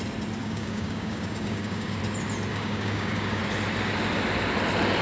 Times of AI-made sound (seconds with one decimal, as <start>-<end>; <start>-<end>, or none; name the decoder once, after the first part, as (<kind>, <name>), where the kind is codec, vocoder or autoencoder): 0.4-2.0 (codec, DAC); 2.5-3.4